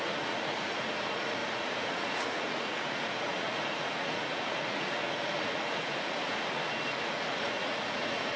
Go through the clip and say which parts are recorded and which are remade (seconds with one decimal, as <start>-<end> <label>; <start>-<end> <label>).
0.0-8.4 remade